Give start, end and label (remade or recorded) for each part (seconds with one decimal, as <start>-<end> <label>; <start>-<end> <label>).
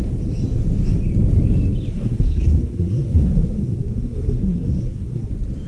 0.0-1.9 recorded; 1.9-5.3 remade; 5.3-5.7 recorded